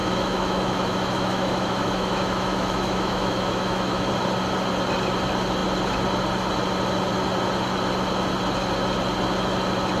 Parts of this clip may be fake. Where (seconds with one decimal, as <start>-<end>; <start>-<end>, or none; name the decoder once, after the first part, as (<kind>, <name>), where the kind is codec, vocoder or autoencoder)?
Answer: 0.0-4.1 (autoencoder, DAC-VAE)